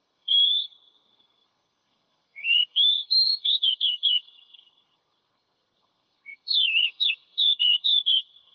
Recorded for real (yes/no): no